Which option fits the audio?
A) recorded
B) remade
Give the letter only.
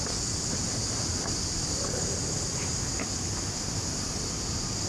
A